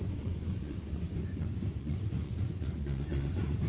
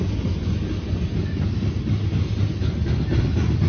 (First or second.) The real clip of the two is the second